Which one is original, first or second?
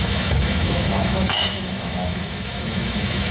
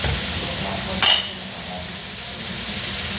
second